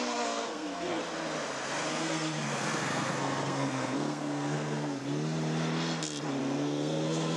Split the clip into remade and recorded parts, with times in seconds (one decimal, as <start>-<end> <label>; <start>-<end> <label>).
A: 0.0-1.0 remade; 1.0-1.9 recorded; 1.9-5.0 remade; 5.0-6.4 recorded; 6.4-7.4 remade